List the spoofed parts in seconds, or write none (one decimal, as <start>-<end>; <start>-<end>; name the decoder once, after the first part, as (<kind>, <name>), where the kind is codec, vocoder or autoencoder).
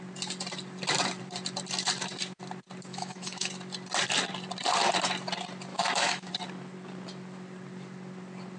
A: 2.9-3.5 (autoencoder, DAC-VAE); 5.7-6.3